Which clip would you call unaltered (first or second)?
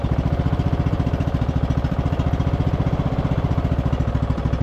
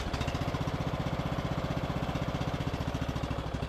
second